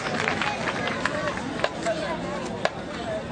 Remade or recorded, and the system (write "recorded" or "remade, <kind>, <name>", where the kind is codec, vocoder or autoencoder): recorded